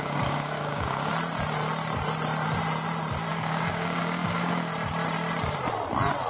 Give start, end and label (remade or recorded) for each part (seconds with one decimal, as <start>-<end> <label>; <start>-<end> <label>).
0.0-1.1 remade; 1.1-3.3 recorded; 3.3-4.7 remade; 4.7-6.3 recorded